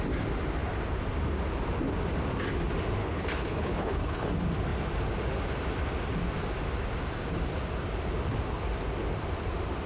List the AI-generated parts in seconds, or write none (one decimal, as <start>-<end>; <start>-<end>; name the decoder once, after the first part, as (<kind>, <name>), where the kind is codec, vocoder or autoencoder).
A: 3.0-4.3 (codec, HILCodec)